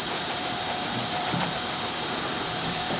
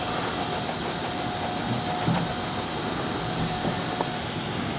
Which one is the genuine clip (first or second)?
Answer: second